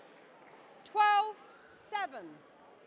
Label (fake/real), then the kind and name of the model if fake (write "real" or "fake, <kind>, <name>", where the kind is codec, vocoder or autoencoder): real